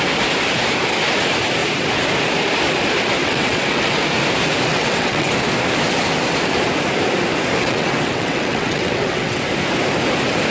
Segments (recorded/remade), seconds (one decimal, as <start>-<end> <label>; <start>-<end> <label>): 0.0-3.2 recorded; 3.2-4.0 remade; 4.0-4.7 recorded; 4.7-5.3 remade; 5.3-7.6 recorded; 7.6-9.4 remade; 9.4-10.5 recorded